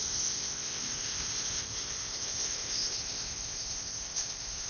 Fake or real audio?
fake